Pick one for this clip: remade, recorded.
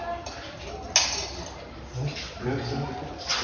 recorded